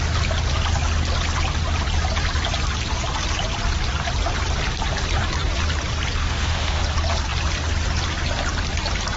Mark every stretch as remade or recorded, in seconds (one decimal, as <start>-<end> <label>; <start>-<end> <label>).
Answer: 0.0-6.2 recorded; 6.2-6.8 remade; 6.8-9.2 recorded